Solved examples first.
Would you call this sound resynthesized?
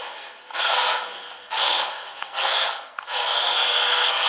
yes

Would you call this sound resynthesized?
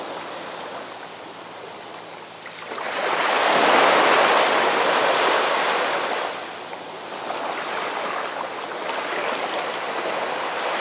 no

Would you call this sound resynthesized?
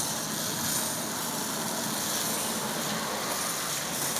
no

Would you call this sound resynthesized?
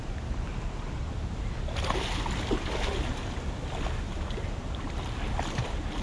no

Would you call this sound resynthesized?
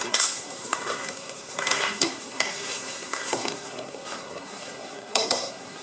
yes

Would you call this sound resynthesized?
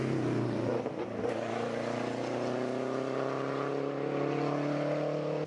no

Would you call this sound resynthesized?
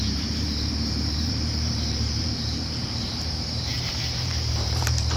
yes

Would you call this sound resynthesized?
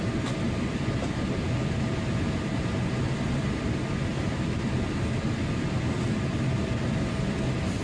no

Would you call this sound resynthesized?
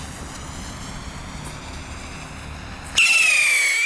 no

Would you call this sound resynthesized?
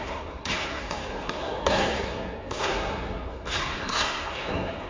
yes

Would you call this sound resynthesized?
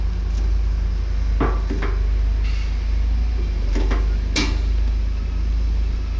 no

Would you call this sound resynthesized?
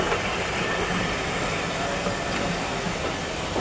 no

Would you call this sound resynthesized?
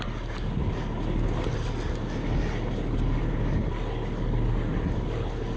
no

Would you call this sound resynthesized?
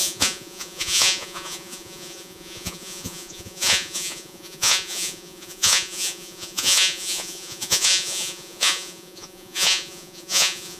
yes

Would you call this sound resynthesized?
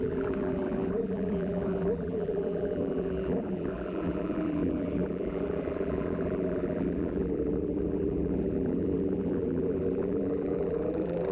yes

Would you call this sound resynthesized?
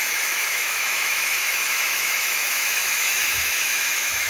yes